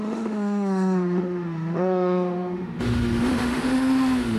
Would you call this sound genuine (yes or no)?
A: no